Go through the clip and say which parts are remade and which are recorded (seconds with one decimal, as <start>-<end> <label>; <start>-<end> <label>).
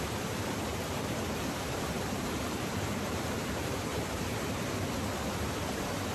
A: 0.0-0.7 recorded; 0.7-4.4 remade; 4.4-6.1 recorded